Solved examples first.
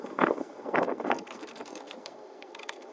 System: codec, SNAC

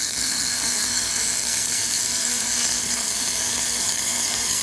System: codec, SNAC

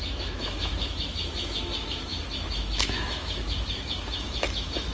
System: autoencoder, DAC-VAE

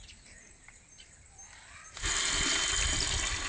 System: none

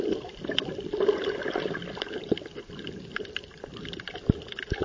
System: none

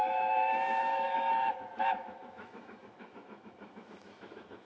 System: autoencoder, DAC-VAE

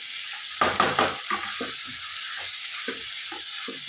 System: none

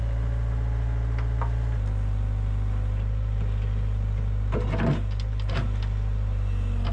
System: none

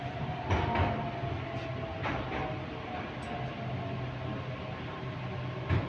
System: none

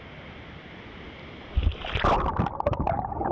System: none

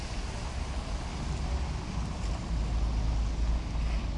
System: none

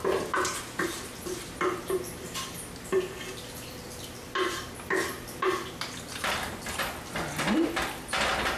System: none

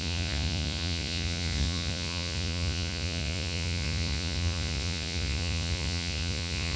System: vocoder, Vocos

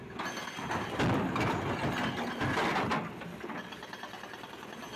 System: none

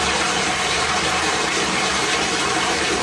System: vocoder, BigVGAN v2